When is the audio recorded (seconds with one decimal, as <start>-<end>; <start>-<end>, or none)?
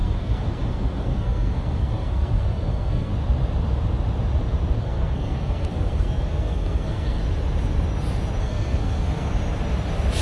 3.1-4.8; 7.2-8.4; 9.3-10.2